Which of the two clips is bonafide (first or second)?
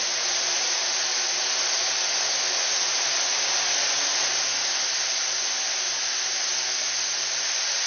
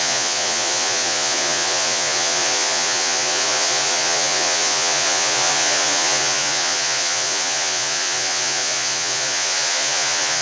first